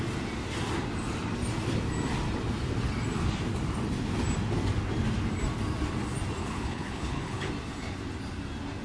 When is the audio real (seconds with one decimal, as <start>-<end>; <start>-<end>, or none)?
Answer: 0.0-6.4; 7.5-8.8